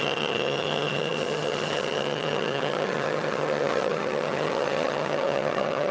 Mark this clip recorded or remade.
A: remade